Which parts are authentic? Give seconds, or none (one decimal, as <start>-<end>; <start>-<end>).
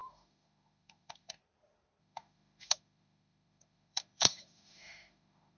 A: 1.4-2.0